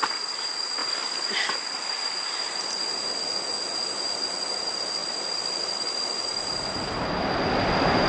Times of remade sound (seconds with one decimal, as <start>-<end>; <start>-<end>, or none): 0.8-1.5; 5.0-7.1